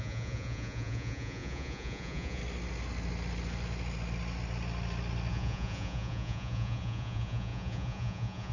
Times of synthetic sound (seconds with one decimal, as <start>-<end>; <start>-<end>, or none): 0.0-2.4; 5.3-8.5